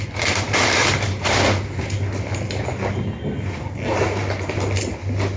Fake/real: real